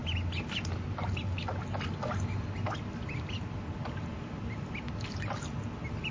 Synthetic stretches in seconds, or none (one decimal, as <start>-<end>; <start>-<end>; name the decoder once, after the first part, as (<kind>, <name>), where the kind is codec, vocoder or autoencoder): none

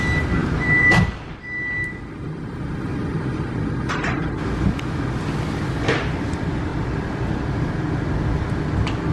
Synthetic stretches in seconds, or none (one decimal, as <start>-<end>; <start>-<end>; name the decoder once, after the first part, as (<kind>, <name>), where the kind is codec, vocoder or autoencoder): 0.4-2.0 (vocoder, BigVGAN v2); 2.9-3.9; 6.7-7.9

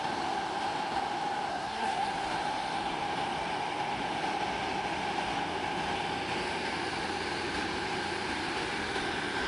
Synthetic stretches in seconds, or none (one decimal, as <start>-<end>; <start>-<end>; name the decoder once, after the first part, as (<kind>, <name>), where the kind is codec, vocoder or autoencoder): 1.5-2.1 (codec, SNAC)

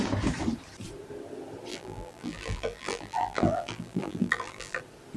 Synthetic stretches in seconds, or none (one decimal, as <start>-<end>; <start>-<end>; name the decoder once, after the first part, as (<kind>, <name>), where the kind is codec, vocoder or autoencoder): 1.7-4.8 (vocoder, BigVGAN v2)

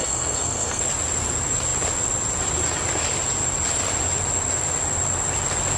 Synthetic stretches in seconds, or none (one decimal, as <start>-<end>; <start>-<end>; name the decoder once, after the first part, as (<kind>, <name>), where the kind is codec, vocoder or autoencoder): 0.0-0.8 (codec, SNAC)

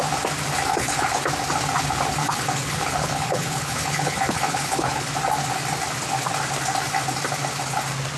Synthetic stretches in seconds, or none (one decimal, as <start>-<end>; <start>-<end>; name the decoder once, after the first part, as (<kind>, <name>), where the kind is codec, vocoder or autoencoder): 0.7-1.2 (codec, HILCodec); 2.2-5.0